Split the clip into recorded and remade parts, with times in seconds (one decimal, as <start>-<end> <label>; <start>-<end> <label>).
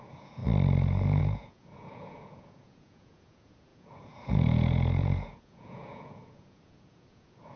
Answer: 0.0-0.4 remade; 0.4-1.2 recorded; 1.2-7.6 remade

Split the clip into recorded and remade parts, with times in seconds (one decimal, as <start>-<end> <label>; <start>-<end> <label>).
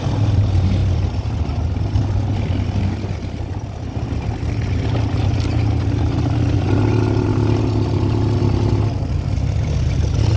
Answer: 0.0-10.4 recorded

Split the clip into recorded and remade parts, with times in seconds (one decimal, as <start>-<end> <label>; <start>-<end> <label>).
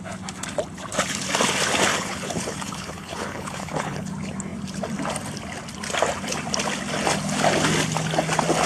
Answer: 0.0-1.9 recorded; 1.9-4.1 remade; 4.1-8.7 recorded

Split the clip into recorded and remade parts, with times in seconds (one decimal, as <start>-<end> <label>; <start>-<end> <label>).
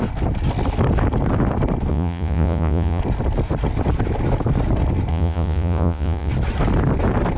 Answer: 0.0-1.9 recorded; 1.9-3.0 remade; 3.0-5.1 recorded; 5.1-6.3 remade; 6.3-7.4 recorded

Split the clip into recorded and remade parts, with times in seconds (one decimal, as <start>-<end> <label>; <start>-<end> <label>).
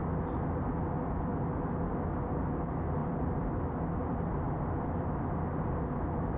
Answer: 0.0-3.0 recorded; 3.0-4.7 remade; 4.7-6.4 recorded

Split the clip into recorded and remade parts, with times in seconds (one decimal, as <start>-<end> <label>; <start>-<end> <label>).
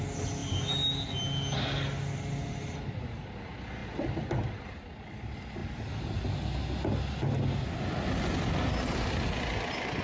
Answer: 0.0-10.0 recorded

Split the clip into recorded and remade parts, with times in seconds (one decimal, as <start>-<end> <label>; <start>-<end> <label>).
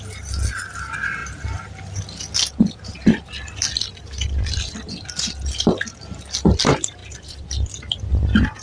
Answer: 0.0-8.6 recorded